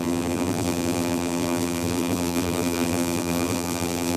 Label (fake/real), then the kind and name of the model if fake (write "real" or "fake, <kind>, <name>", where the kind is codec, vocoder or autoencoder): fake, vocoder, BigVGAN v2